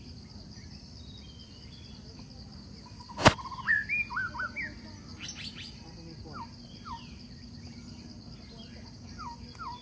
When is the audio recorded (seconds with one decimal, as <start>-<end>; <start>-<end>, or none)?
0.0-9.8